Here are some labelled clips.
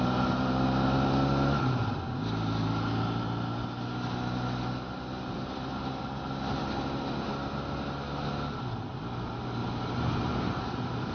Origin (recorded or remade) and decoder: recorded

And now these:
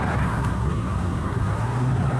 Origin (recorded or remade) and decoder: remade, codec, SNAC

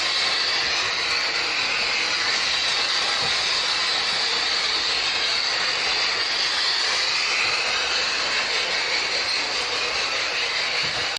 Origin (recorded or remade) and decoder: recorded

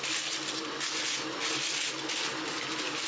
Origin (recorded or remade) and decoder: recorded